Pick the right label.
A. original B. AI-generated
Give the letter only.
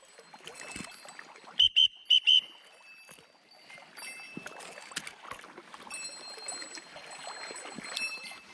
A